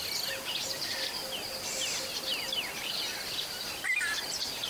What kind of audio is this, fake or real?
real